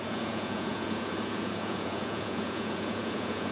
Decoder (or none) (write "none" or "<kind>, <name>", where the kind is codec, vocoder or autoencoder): vocoder, Vocos